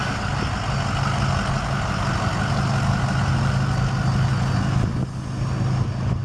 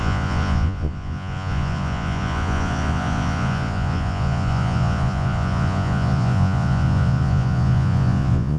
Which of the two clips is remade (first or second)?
second